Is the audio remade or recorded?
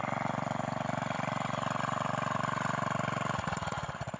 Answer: remade